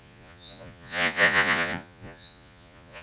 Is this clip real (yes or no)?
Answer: no